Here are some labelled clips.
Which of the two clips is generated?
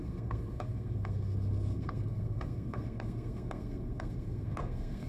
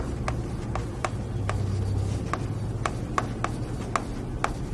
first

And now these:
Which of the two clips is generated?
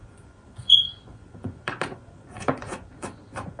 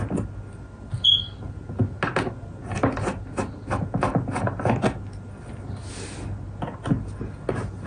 first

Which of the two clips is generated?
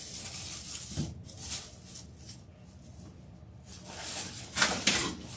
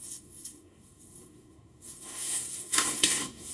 second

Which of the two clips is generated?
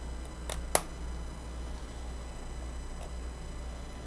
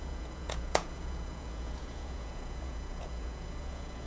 second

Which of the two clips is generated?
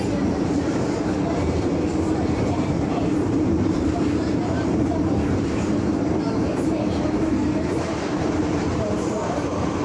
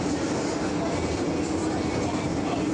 first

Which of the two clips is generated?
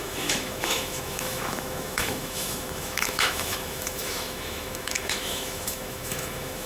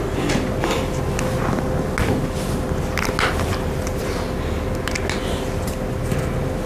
first